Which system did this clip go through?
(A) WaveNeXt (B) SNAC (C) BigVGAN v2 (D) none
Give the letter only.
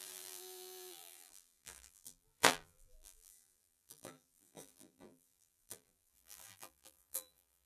C